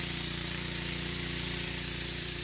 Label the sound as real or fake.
fake